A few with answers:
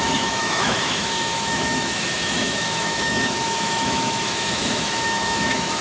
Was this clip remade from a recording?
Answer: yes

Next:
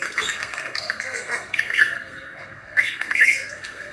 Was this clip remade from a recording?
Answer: yes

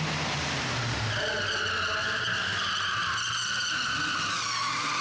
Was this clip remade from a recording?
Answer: no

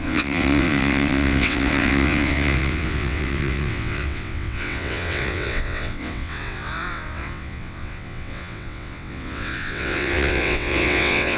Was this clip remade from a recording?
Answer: yes